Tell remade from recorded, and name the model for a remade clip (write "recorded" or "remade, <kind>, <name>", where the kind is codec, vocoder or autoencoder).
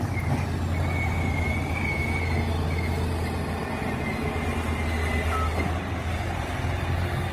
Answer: recorded